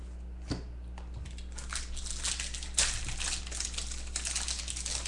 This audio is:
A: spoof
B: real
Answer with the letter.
B